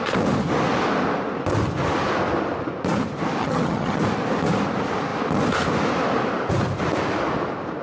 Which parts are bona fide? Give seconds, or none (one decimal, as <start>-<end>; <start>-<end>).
0.0-3.4; 4.0-7.8